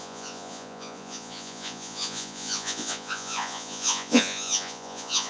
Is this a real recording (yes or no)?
no